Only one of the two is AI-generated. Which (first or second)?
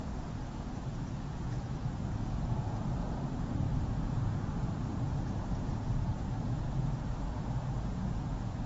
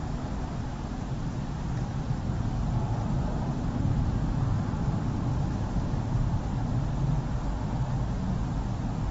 first